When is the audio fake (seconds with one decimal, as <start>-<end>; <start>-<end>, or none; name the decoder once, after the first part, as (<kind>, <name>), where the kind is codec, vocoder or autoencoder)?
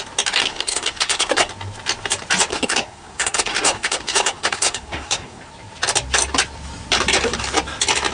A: 0.4-1.5 (codec, SNAC); 2.5-5.4